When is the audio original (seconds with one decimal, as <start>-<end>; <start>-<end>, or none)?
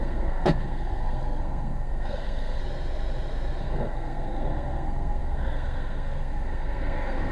2.6-3.6